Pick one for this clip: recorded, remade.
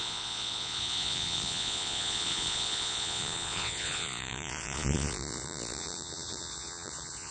remade